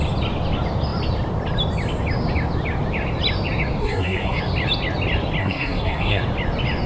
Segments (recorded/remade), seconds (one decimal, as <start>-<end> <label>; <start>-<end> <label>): 0.0-3.8 recorded; 3.8-4.4 remade; 4.4-5.4 recorded; 5.4-6.2 remade; 6.2-6.9 recorded